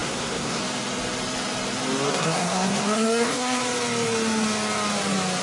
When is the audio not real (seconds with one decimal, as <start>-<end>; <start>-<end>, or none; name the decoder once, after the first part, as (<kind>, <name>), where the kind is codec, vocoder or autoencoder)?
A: 0.0-0.6 (codec, SNAC); 2.1-3.6